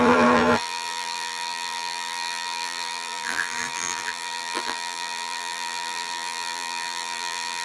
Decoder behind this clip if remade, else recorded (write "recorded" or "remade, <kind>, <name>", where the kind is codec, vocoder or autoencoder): remade, vocoder, BigVGAN v2